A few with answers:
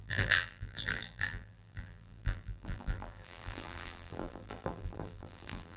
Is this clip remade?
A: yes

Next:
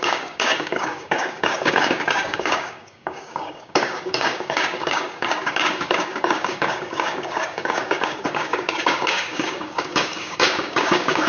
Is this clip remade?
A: yes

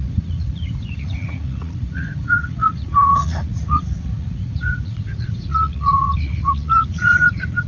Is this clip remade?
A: yes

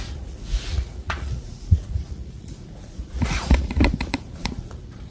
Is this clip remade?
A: yes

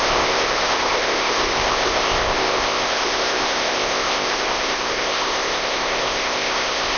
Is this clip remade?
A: yes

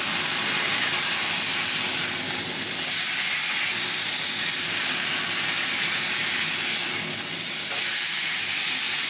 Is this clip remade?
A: no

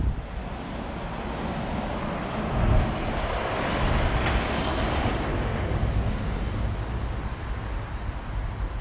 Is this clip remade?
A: no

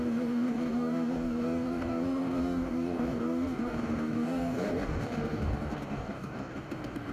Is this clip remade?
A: yes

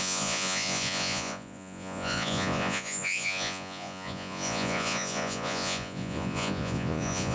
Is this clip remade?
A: yes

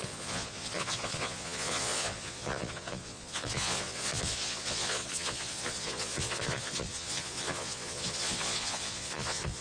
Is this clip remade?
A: yes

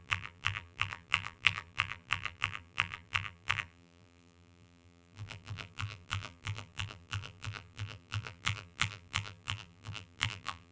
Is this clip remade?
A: yes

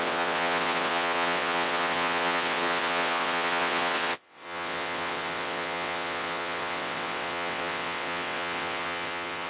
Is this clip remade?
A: yes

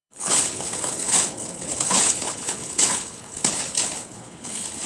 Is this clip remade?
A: yes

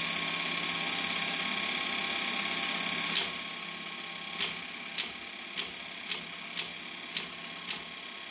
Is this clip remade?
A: no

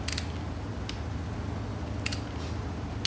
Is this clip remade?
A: no